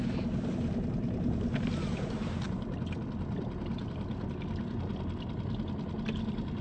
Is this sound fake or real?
real